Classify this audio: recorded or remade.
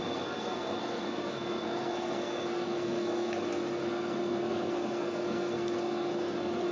remade